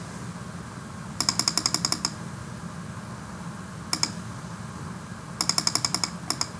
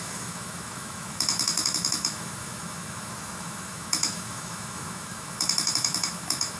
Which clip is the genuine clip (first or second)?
first